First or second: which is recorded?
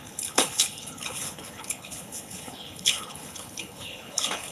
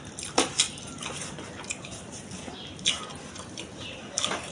second